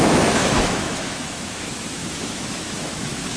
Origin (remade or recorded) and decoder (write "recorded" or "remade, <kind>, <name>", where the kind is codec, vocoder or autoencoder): remade, autoencoder, DAC-VAE